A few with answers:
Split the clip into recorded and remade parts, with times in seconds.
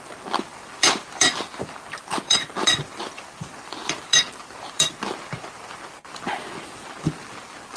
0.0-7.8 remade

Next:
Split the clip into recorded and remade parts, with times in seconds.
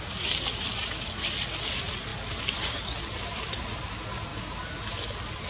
0.0-5.5 recorded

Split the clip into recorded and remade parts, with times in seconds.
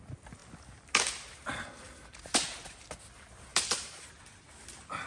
0.0-3.5 recorded; 3.5-4.2 remade; 4.2-5.1 recorded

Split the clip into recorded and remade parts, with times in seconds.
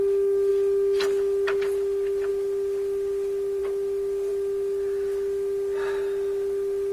0.0-6.9 recorded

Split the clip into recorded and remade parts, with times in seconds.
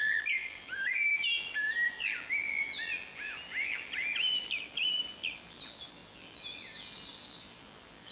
0.0-8.1 remade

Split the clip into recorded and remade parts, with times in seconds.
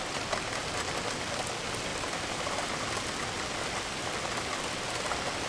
0.0-1.9 recorded; 1.9-3.0 remade; 3.0-5.5 recorded